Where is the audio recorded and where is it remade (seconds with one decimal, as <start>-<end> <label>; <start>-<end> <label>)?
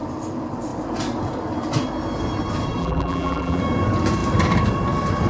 0.0-2.8 recorded; 2.8-3.6 remade; 3.6-5.3 recorded